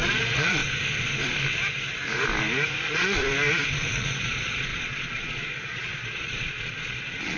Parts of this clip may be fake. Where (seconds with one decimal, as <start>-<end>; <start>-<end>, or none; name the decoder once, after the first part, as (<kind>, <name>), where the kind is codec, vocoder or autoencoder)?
0.0-0.6 (vocoder, Vocos); 2.8-3.2; 3.9-7.4